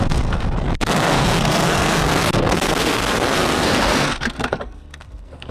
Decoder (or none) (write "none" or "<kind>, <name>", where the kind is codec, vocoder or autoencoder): codec, SNAC